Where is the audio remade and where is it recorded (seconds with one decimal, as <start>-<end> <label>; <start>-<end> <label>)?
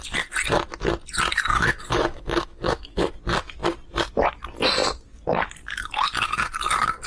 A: 0.0-1.5 recorded; 1.5-3.1 remade; 3.1-7.1 recorded